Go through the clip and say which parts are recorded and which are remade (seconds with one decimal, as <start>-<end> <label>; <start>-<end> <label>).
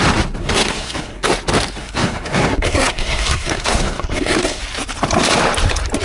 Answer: 0.0-0.4 recorded; 0.4-1.3 remade; 1.3-1.8 recorded; 1.8-4.6 remade; 4.6-6.0 recorded